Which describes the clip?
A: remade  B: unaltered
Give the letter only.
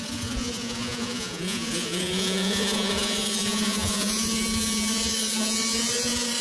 A